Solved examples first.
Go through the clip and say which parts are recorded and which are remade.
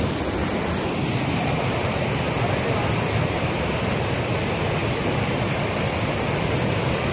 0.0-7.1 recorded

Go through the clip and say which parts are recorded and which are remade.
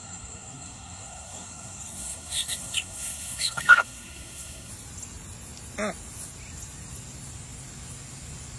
0.0-4.7 remade; 4.7-8.6 recorded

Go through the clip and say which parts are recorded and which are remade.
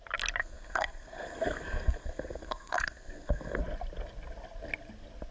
0.0-0.4 recorded; 0.4-3.6 remade; 3.6-5.3 recorded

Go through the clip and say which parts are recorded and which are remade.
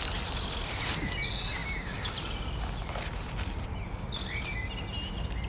0.0-5.5 recorded